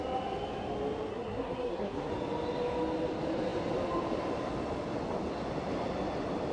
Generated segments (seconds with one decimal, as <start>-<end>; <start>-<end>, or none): 1.1-2.1